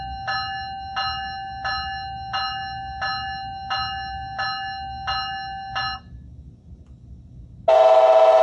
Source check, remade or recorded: recorded